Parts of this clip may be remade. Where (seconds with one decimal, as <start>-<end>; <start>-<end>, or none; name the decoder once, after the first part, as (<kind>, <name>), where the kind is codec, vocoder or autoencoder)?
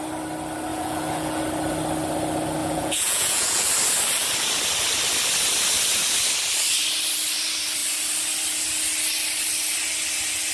0.7-1.4 (vocoder, Vocos); 2.6-3.7